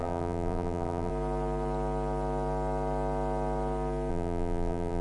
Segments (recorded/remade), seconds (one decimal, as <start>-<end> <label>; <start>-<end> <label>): 0.0-1.1 remade; 1.1-4.1 recorded; 4.1-5.0 remade